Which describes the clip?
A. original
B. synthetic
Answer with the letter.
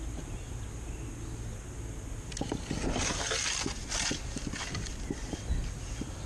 A